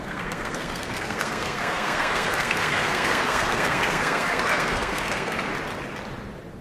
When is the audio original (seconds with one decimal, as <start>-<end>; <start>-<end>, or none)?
5.5-6.6